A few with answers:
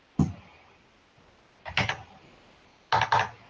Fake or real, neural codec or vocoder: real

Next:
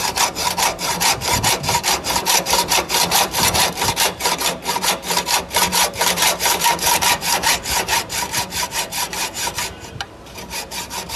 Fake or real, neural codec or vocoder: fake, vocoder, BigVGAN v2